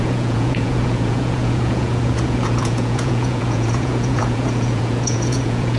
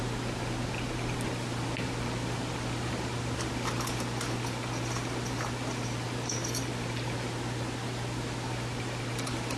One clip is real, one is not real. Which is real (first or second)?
second